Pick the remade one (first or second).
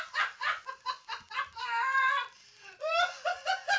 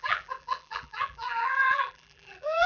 second